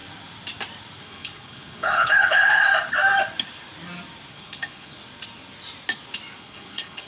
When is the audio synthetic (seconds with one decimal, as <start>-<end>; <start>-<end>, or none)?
1.0-2.6; 4.3-5.0; 6.4-7.1